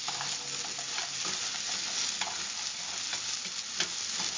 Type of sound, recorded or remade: recorded